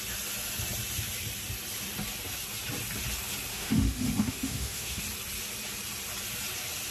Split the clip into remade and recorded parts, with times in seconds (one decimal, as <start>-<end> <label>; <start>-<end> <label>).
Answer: 0.0-3.5 recorded; 3.5-5.0 remade; 5.0-6.9 recorded